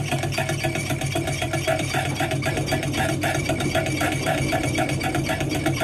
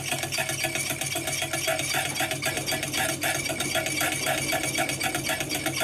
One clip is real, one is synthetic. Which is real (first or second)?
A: second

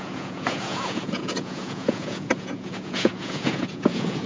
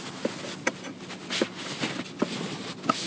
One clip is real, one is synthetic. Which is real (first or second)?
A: second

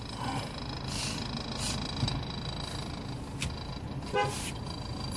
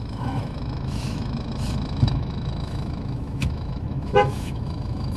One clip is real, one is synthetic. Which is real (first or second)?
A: first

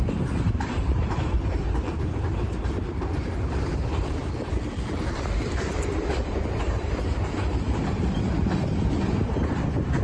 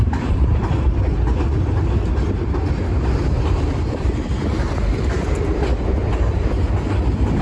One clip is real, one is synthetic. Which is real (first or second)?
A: second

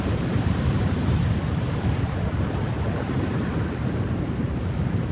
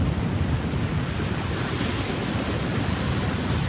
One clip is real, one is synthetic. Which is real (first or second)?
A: second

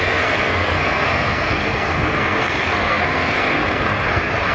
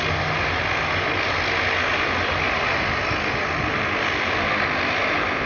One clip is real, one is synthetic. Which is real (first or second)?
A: second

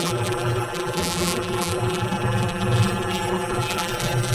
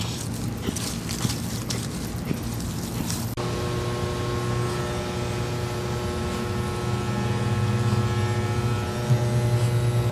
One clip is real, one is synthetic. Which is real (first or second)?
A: second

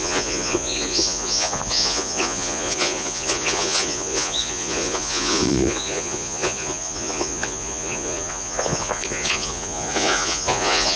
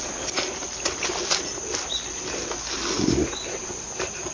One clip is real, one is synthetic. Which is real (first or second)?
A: second